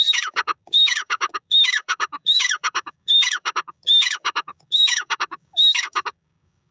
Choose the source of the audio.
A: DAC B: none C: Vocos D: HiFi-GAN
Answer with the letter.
A